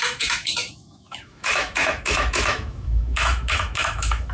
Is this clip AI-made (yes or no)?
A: yes